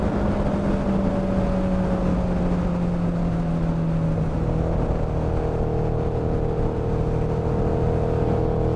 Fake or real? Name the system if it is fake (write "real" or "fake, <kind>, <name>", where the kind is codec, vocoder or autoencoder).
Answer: real